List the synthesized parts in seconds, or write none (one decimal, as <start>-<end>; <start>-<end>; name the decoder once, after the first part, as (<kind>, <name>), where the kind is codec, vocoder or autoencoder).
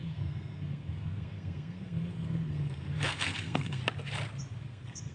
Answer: 0.0-3.8 (codec, SNAC); 4.6-5.1